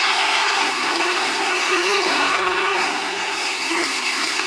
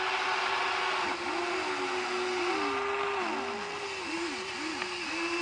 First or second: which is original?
second